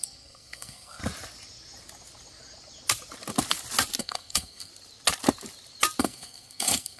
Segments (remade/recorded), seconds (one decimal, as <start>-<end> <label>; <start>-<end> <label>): 0.0-1.0 remade; 1.0-4.0 recorded; 4.0-4.7 remade; 4.7-6.0 recorded; 6.0-7.0 remade